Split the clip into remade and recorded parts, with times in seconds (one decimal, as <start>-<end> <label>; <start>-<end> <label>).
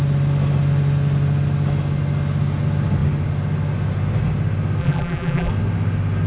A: 0.0-4.8 recorded; 4.8-5.5 remade; 5.5-6.3 recorded